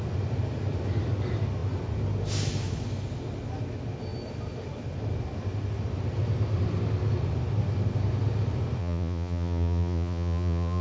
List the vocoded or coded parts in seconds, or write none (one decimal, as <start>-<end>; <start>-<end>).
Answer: 8.8-10.8